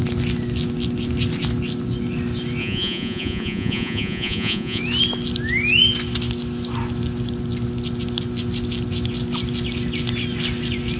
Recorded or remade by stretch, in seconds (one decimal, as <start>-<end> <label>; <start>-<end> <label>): 0.0-2.6 recorded; 2.6-4.8 remade; 4.8-11.0 recorded